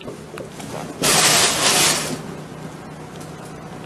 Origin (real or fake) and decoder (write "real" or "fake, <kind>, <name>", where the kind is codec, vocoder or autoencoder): real